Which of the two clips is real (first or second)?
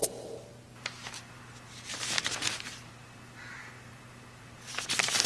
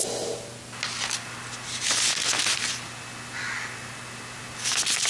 second